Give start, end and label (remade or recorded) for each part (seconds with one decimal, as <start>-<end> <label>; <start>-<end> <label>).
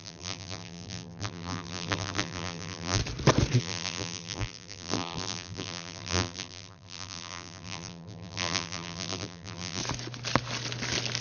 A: 0.0-3.0 remade; 3.0-3.6 recorded; 3.6-9.8 remade; 9.8-11.2 recorded